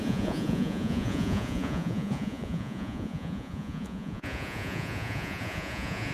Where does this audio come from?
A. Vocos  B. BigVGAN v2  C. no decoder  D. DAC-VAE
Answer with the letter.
A